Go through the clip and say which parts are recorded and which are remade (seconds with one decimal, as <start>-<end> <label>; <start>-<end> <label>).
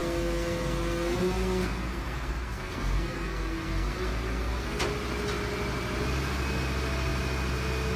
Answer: 0.0-4.8 remade; 4.8-8.0 recorded